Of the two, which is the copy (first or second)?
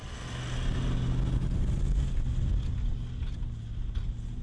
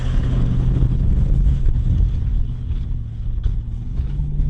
second